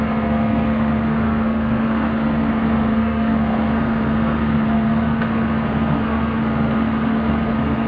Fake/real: fake